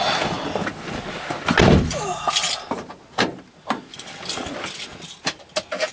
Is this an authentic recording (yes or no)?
yes